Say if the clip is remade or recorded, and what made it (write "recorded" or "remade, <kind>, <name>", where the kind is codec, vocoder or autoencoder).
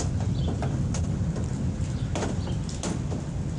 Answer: recorded